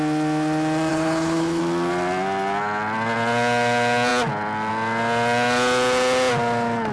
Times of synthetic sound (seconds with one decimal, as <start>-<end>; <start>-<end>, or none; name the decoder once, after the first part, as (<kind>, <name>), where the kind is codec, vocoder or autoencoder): 0.9-1.6 (codec, HILCodec)